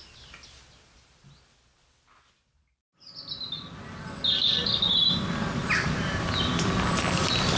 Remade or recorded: recorded